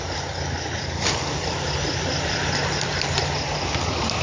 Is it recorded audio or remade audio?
remade